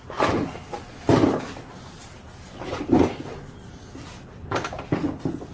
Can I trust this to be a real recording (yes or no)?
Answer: yes